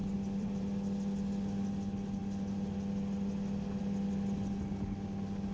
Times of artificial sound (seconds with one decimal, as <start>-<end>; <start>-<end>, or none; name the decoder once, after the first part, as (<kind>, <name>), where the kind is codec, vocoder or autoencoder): 0.0-0.6 (vocoder, BigVGAN v2)